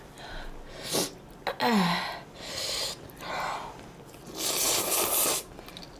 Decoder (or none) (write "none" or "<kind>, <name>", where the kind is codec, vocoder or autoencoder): none